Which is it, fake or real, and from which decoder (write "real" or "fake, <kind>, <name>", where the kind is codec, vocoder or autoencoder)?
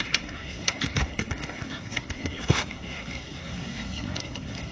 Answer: fake, codec, SNAC